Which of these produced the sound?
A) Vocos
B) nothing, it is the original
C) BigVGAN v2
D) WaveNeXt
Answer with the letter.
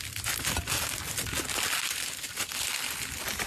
B